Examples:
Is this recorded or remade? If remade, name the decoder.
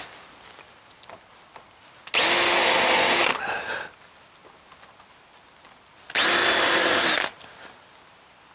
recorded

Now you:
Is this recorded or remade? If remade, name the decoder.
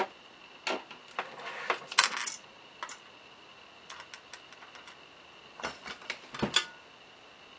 recorded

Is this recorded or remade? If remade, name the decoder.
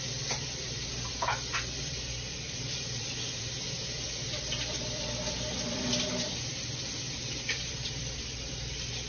remade, vocoder, BigVGAN v2